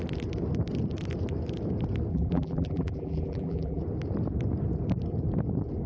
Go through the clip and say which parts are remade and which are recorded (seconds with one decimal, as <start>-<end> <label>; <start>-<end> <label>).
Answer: 0.0-2.1 recorded; 2.1-3.8 remade; 3.8-5.9 recorded

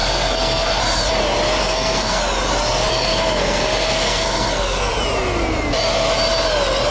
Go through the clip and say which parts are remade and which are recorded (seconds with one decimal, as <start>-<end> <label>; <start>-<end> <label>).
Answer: 0.0-0.8 remade; 0.8-1.6 recorded; 1.6-2.2 remade; 2.2-2.9 recorded; 2.9-4.9 remade; 4.9-6.9 recorded

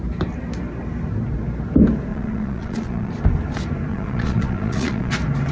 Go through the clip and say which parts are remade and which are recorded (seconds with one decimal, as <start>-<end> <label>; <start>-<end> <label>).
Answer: 0.0-2.1 recorded; 2.1-3.1 remade; 3.1-3.9 recorded; 3.9-5.1 remade; 5.1-5.5 recorded

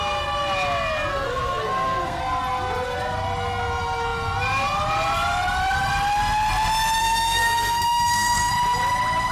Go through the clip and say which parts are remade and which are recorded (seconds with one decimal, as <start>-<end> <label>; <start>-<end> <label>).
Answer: 0.0-1.1 recorded; 1.1-2.2 remade; 2.2-7.0 recorded; 7.0-8.5 remade; 8.5-9.3 recorded

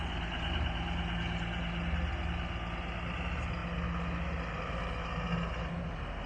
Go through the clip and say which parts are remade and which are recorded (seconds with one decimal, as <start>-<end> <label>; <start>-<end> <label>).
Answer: 0.0-6.3 recorded

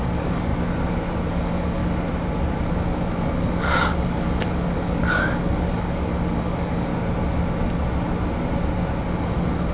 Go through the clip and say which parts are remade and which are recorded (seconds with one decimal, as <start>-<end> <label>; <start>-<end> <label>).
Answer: 0.0-0.5 remade; 0.5-1.3 recorded; 1.3-1.8 remade; 1.8-2.7 recorded; 2.7-6.9 remade; 6.9-9.0 recorded; 9.0-9.7 remade

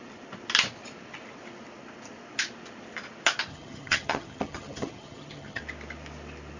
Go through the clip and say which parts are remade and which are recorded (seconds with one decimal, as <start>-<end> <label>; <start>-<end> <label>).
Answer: 0.0-3.5 recorded; 3.5-5.6 remade; 5.6-6.6 recorded

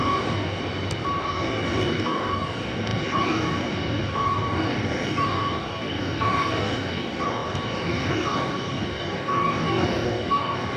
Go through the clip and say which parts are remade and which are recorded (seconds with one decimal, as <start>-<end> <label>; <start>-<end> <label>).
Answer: 0.0-0.6 remade; 0.6-1.2 recorded; 1.2-10.8 remade